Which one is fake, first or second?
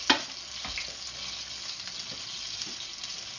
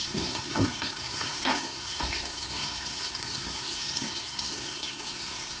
second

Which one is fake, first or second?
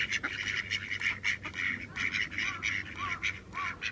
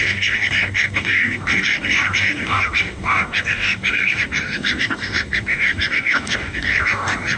second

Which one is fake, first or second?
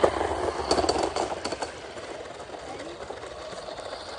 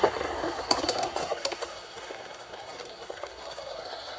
second